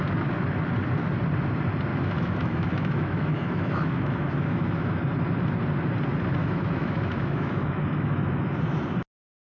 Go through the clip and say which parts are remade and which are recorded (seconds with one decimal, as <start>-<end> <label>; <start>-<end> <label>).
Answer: 0.0-1.9 recorded; 1.9-5.0 remade; 5.0-6.4 recorded; 6.4-8.6 remade; 8.6-9.4 recorded